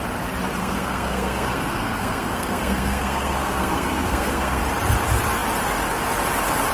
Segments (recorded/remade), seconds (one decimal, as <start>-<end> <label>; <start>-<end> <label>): 0.0-0.6 recorded; 0.6-4.6 remade; 4.6-6.7 recorded